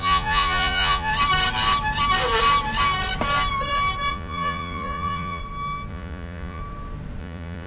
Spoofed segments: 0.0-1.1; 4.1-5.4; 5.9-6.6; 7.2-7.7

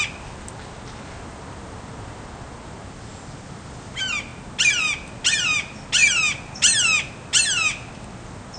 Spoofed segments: none

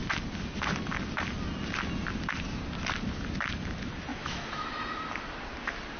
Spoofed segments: 4.1-4.7